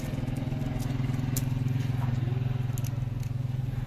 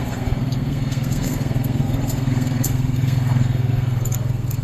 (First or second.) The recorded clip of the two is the first